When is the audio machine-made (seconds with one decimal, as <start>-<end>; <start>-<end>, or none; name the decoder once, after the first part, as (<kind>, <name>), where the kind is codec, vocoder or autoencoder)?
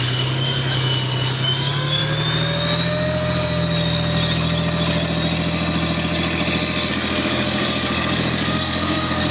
0.0-2.0 (codec, DAC); 6.9-9.3